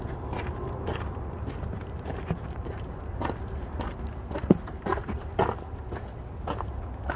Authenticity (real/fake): real